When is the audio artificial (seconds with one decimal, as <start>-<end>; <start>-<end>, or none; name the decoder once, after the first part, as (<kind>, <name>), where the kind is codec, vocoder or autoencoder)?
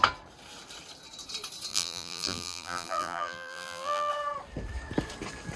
1.7-4.1 (vocoder, BigVGAN v2)